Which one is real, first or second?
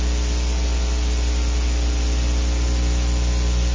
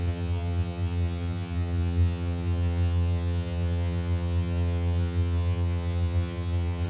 first